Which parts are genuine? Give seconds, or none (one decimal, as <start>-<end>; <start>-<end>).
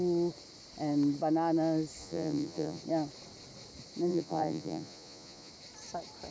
0.0-2.0; 2.8-4.1; 5.5-6.3